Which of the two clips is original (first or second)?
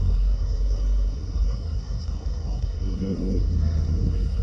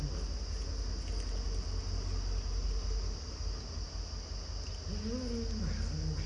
second